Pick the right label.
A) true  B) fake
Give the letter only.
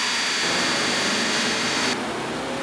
A